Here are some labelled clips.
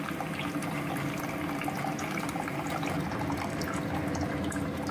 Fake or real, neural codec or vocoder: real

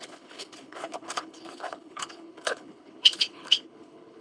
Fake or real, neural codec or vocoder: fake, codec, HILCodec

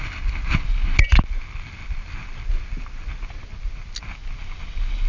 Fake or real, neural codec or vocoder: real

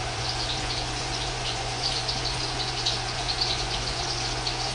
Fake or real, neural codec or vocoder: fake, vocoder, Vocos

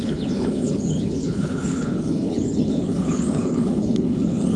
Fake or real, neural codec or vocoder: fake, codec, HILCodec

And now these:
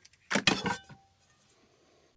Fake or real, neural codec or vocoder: real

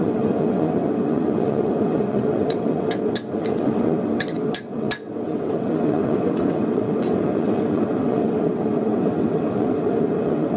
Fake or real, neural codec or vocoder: fake, vocoder, WaveNeXt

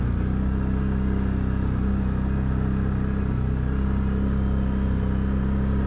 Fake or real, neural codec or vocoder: real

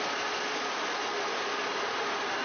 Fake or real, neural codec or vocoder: real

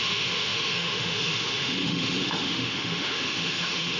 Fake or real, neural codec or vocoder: fake, autoencoder, DAC-VAE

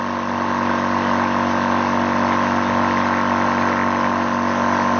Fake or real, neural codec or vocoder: real